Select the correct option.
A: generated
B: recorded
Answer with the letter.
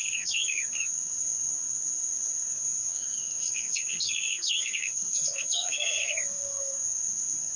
A